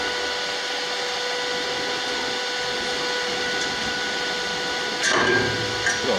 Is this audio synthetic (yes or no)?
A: no